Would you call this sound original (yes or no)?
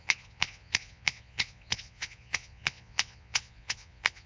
no